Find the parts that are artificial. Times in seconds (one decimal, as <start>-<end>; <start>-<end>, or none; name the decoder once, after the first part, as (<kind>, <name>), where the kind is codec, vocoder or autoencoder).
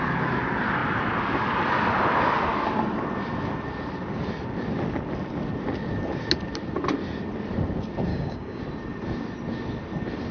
8.1-8.6 (codec, DAC)